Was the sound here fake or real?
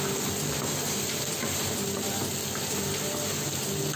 real